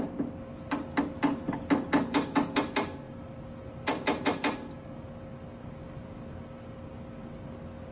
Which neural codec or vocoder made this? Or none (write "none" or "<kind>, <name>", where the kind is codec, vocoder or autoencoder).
none